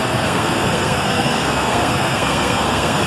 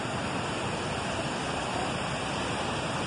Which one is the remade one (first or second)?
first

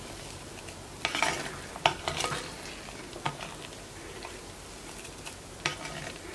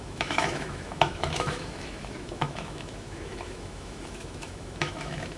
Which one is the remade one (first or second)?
second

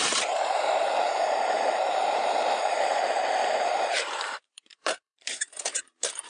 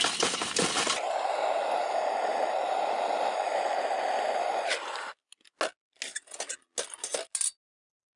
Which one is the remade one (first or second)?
first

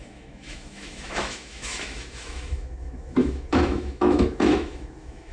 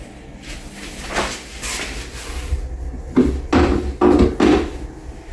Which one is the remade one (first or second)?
first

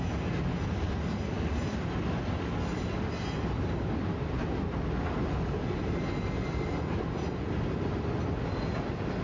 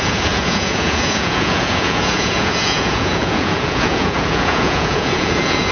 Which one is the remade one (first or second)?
second